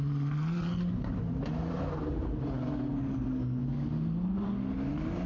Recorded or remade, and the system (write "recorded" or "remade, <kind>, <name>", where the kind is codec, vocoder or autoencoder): recorded